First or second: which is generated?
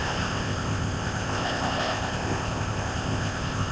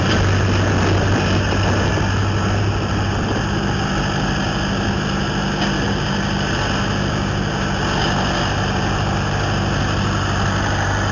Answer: first